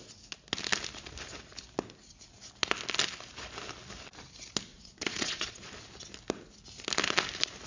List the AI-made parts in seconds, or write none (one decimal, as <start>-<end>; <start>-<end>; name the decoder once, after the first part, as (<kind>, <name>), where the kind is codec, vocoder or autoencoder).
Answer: 4.7-5.7 (vocoder, Vocos)